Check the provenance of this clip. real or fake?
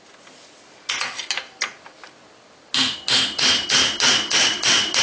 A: real